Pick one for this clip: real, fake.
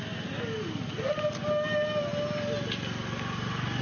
real